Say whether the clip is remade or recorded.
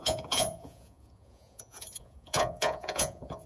remade